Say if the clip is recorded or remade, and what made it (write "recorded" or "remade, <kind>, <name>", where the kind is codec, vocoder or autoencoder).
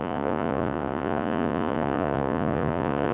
remade, vocoder, Vocos